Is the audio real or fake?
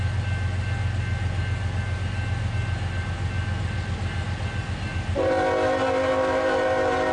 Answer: real